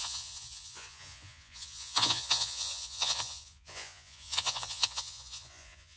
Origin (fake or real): fake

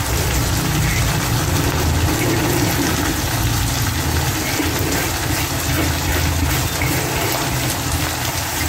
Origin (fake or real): real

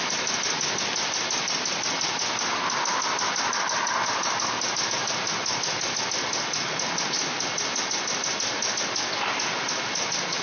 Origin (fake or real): real